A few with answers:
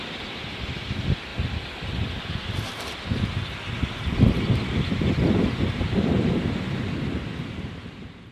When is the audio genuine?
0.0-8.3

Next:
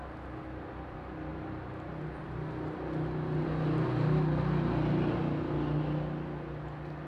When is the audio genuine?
0.0-1.3; 2.0-7.1

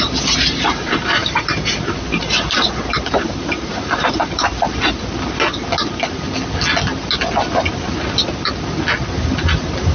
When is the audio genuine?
4.5-9.2

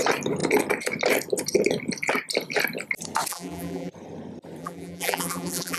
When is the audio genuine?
0.0-3.3; 3.9-4.6

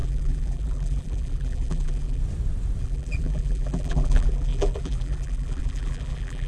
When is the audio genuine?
2.2-2.8

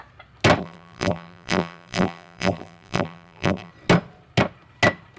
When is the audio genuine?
0.0-0.6; 3.7-5.2

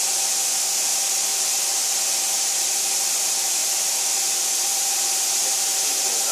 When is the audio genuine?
0.0-0.9; 1.5-2.5; 3.1-3.6; 4.3-4.7; 5.7-6.3

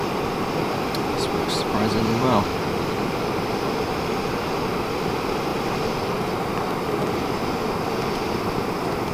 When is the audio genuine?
2.5-5.0